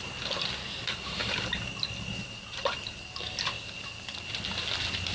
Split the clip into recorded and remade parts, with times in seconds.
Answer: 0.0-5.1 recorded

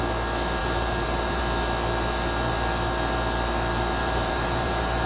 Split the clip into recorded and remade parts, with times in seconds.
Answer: 0.0-0.6 recorded; 0.6-1.4 remade; 1.4-4.0 recorded; 4.0-5.1 remade